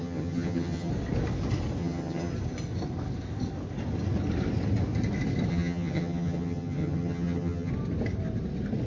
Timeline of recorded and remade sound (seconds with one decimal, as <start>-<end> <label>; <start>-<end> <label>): 0.0-0.9 remade; 0.9-1.8 recorded; 1.8-2.3 remade; 2.3-5.5 recorded; 5.5-7.7 remade; 7.7-8.9 recorded